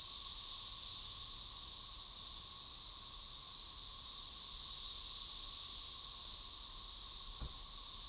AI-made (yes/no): no